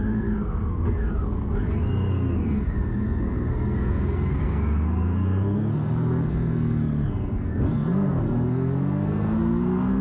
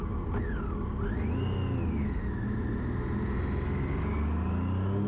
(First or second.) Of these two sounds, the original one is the second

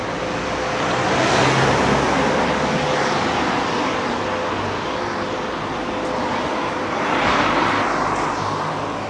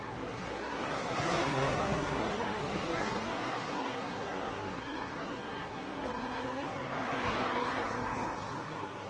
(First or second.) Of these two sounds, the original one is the first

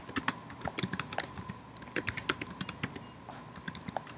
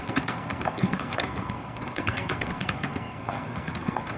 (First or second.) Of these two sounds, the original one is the first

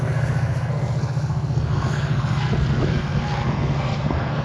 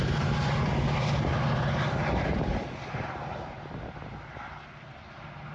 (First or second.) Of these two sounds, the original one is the second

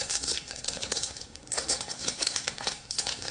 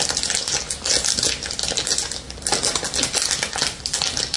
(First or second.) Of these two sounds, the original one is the second